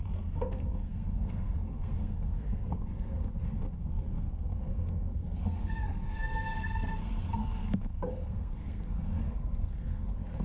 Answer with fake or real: fake